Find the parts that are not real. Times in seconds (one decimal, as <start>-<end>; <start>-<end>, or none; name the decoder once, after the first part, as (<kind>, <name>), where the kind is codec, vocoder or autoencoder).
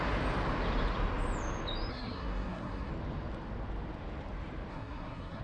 1.9-2.9 (codec, SNAC); 4.7-5.4